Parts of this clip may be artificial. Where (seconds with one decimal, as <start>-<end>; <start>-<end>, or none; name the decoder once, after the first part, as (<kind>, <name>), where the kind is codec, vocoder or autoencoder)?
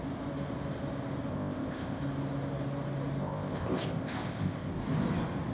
1.3-2.0 (codec, ZipCodec); 3.2-4.7